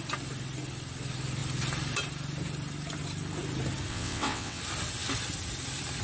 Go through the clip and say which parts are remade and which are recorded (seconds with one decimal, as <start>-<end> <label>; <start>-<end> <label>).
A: 0.0-3.9 recorded; 3.9-4.6 remade; 4.6-6.0 recorded